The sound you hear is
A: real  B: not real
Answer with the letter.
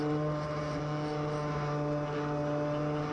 A